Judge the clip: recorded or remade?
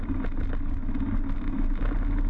recorded